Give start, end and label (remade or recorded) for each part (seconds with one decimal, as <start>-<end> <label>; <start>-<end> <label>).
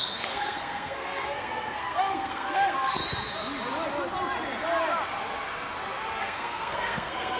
0.0-3.0 remade; 3.0-6.2 recorded; 6.2-7.4 remade